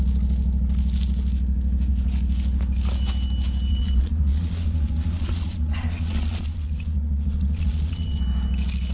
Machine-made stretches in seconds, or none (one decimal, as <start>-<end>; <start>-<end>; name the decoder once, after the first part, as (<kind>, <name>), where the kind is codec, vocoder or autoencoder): 3.7-8.2 (vocoder, Vocos)